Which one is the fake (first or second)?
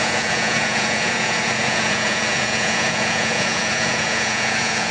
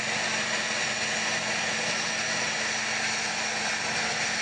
first